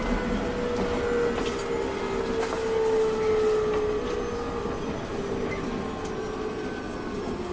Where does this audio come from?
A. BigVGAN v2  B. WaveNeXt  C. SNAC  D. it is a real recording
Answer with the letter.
D